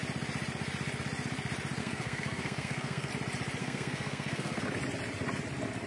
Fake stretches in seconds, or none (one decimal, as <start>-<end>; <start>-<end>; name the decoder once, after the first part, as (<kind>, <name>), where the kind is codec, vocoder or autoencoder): 1.8-3.1 (codec, SNAC); 3.6-4.6

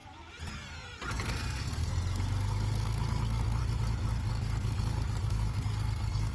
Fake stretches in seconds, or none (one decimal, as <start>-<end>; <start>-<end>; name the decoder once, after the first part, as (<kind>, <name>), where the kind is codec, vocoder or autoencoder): 1.1-3.6 (codec, SNAC); 4.3-6.3